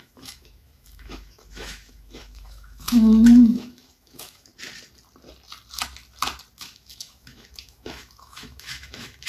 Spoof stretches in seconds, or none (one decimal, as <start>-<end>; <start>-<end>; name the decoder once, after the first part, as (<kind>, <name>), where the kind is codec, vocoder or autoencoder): 0.0-4.5 (autoencoder, DAC-VAE); 6.6-9.3